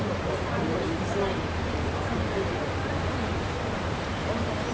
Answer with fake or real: fake